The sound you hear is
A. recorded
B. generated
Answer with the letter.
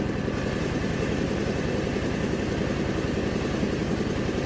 A